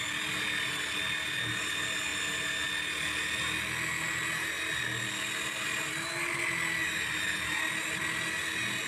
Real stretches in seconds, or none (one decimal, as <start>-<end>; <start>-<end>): 0.0-8.9